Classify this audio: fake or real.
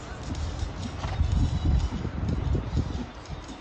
real